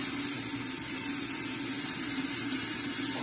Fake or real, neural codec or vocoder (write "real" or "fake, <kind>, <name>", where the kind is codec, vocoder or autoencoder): real